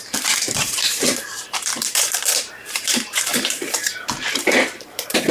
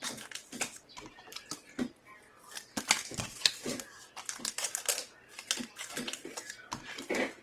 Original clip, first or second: second